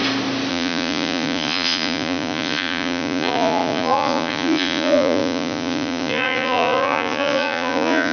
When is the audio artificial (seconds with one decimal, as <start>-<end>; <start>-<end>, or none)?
0.5-8.1